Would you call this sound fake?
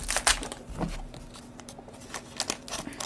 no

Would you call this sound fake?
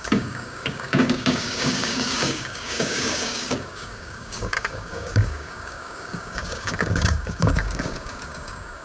yes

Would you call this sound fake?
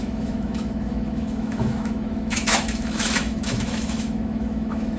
yes